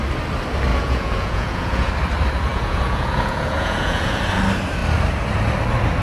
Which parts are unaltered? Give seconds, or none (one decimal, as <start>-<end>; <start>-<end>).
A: 0.0-0.7; 1.9-2.5; 4.2-6.0